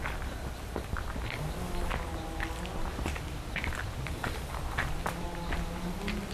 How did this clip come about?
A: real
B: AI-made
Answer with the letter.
A